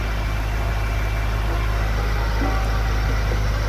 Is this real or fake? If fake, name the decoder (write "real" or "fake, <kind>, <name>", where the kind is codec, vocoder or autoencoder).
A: real